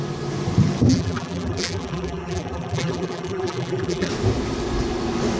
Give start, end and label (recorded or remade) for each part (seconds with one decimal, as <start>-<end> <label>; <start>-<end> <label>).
0.0-0.9 recorded; 0.9-4.1 remade; 4.1-5.4 recorded